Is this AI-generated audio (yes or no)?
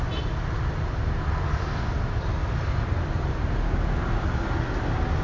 no